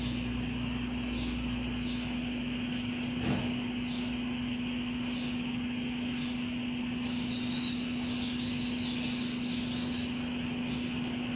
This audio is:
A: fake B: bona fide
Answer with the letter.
B